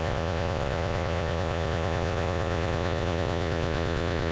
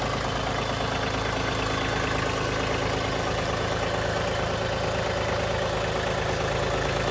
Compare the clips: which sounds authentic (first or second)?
second